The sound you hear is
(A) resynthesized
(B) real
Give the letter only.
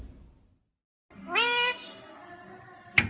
B